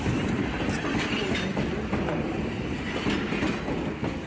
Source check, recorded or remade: recorded